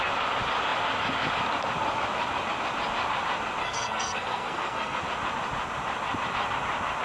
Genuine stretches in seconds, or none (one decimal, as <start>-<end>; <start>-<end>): 0.0-3.6; 5.0-7.0